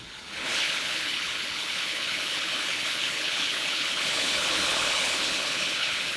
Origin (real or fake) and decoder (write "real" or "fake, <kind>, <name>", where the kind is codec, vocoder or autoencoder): fake, codec, HILCodec